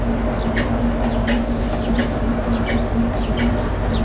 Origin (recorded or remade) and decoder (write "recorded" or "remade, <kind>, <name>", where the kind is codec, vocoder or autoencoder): recorded